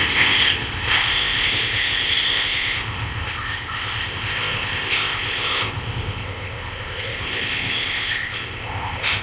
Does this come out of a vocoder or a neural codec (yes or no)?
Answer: yes